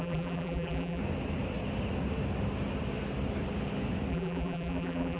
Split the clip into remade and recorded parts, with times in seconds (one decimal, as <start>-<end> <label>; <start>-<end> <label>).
0.0-1.0 remade; 1.0-4.1 recorded; 4.1-5.2 remade